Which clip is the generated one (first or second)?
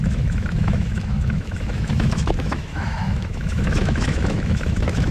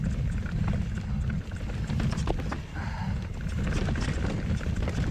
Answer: first